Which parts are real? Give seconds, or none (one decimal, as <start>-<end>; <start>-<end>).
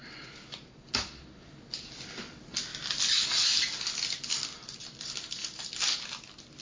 0.0-6.6